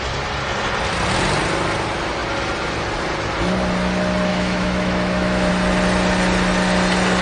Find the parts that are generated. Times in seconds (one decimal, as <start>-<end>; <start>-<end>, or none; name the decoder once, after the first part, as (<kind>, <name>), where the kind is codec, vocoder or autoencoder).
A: 4.3-5.5 (autoencoder, DAC-VAE)